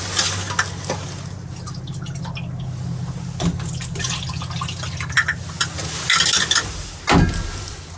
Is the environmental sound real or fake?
real